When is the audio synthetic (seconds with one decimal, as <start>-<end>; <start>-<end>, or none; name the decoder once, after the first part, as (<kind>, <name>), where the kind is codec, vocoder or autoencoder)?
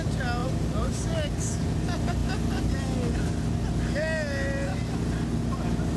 0.4-1.0 (vocoder, BigVGAN v2)